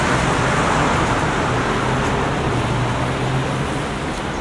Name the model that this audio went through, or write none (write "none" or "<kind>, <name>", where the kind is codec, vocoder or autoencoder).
none